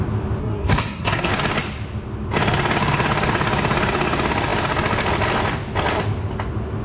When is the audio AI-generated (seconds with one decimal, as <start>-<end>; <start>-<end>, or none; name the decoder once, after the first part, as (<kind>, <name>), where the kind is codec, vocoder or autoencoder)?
0.4-1.3 (codec, SNAC)